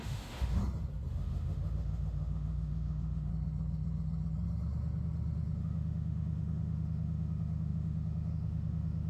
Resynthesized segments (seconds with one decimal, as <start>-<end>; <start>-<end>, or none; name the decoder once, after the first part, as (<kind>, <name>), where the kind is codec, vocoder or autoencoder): 0.0-0.6 (autoencoder, DAC-VAE); 1.1-3.3; 5.6-9.1

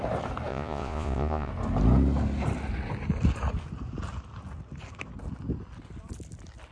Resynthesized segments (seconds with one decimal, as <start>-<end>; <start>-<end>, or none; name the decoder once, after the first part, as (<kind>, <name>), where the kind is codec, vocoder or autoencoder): 0.5-1.5 (vocoder, Vocos)